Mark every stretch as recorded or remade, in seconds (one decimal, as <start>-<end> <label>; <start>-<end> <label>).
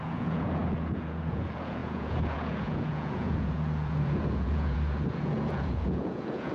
0.0-6.5 remade